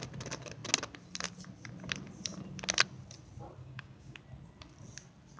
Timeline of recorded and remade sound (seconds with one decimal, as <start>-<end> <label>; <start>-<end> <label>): 0.0-3.6 recorded; 3.6-4.2 remade; 4.2-5.4 recorded